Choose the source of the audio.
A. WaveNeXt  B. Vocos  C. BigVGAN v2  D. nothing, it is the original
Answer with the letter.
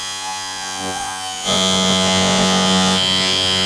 B